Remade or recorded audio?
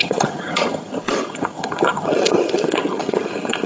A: remade